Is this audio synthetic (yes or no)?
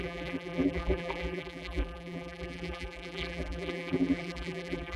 yes